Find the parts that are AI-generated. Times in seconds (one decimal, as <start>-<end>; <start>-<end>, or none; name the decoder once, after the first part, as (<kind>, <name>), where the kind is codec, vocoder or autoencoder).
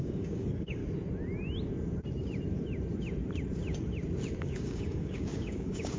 0.0-0.8 (codec, DAC); 4.4-6.0